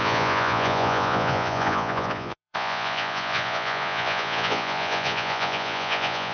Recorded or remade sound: remade